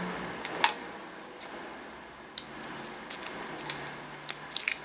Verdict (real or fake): real